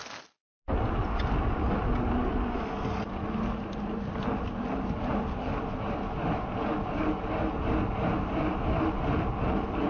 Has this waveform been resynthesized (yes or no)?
no